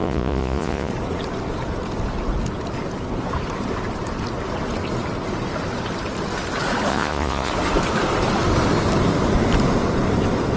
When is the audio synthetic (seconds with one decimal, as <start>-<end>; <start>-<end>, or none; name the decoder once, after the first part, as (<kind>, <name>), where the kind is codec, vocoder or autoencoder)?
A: 0.0-0.9 (vocoder, Vocos); 6.9-7.5